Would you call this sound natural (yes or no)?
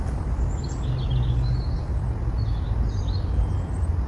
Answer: yes